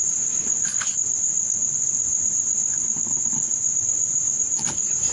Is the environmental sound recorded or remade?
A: remade